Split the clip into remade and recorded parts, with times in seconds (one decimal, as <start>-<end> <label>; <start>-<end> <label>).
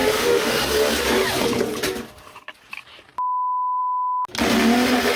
0.0-0.6 remade; 0.6-5.2 recorded